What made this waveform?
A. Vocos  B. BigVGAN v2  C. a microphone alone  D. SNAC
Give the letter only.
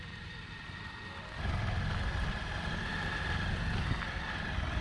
C